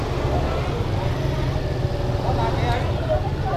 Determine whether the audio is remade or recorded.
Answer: recorded